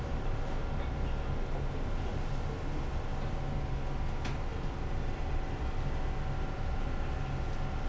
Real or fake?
real